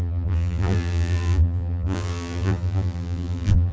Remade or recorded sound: remade